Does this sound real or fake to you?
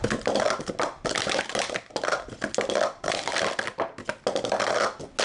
real